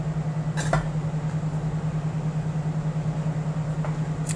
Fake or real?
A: real